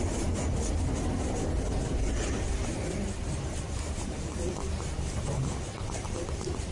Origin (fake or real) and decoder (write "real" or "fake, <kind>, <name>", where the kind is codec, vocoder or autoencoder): real